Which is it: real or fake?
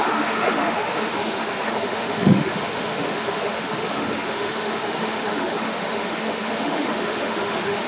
fake